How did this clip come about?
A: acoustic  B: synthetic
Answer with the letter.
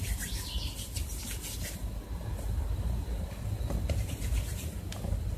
A